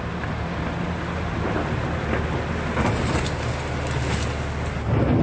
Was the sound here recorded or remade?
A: recorded